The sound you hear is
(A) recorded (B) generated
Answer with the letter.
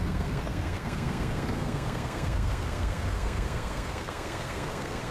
B